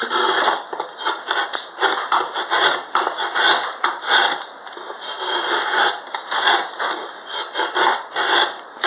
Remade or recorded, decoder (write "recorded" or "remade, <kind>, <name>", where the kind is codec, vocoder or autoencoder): recorded